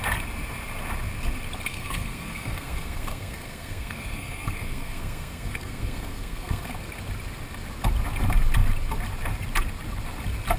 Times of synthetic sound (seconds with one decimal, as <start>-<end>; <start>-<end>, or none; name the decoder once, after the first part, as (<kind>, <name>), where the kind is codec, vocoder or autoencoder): 1.7-6.7 (codec, SNAC)